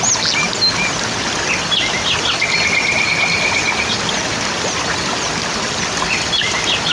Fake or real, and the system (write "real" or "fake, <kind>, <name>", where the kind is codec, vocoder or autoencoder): real